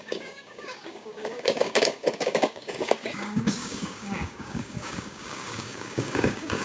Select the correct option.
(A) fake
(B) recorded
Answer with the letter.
A